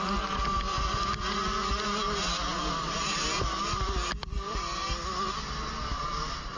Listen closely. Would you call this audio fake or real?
real